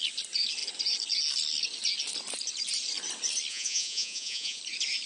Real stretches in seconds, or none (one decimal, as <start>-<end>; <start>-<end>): 0.0-3.5; 4.6-5.1